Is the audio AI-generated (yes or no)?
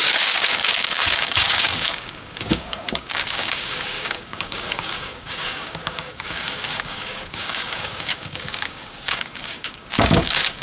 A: yes